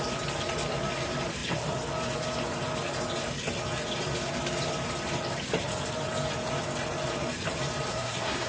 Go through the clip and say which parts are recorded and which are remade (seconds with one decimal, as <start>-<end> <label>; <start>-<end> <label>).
0.0-7.9 recorded; 7.9-8.5 remade